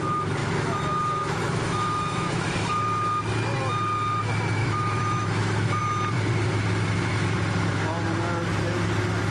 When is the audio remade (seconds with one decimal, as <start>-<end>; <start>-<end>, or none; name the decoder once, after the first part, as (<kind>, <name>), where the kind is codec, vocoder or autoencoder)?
0.4-2.4 (autoencoder, DAC-VAE); 4.6-5.8